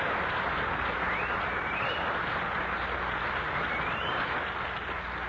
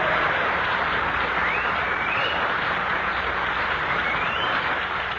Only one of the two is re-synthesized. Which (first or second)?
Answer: second